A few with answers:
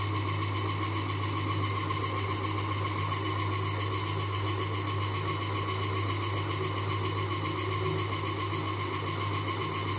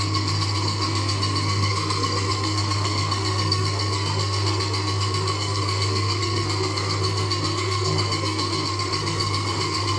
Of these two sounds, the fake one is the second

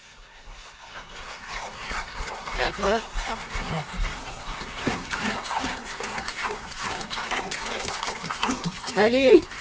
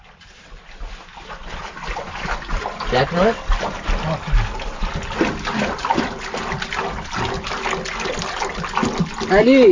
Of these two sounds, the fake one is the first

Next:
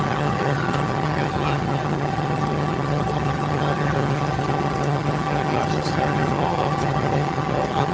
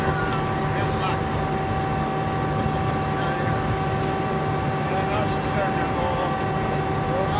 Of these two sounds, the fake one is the first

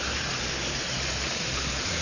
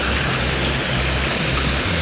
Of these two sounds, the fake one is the first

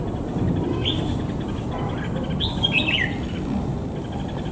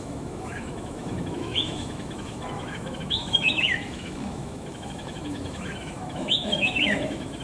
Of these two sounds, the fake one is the second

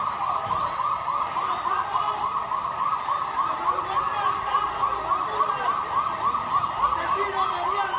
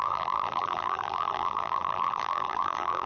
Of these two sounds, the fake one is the second